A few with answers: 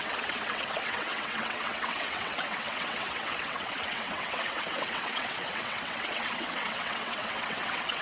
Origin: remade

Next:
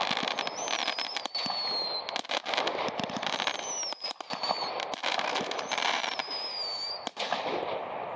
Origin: recorded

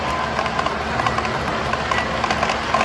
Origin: recorded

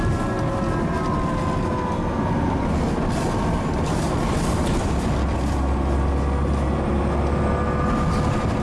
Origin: recorded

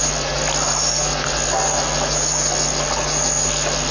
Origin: recorded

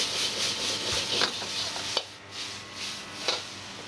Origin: recorded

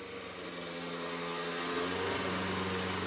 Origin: recorded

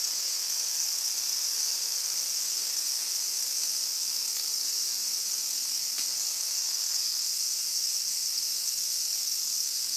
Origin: remade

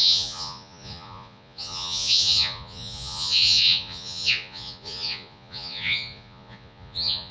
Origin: remade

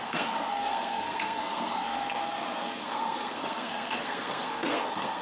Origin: remade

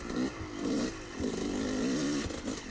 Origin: recorded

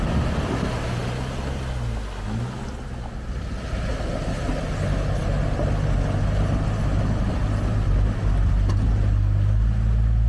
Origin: recorded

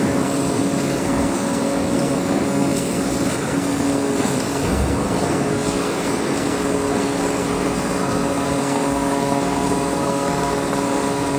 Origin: remade